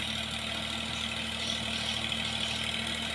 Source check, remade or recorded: recorded